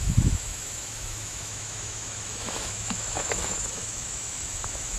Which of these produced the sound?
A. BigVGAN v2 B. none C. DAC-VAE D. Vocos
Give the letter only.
C